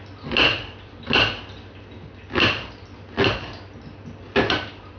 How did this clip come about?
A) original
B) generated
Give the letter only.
A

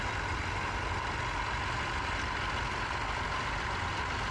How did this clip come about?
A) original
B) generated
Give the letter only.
A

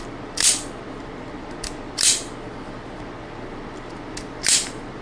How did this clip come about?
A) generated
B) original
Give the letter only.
B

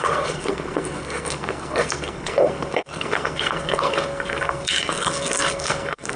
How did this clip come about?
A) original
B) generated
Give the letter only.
B